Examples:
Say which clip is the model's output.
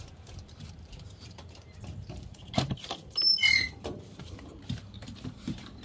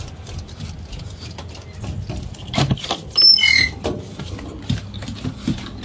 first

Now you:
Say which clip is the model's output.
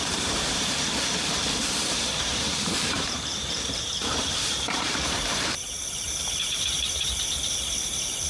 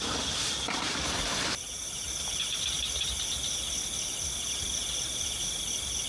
first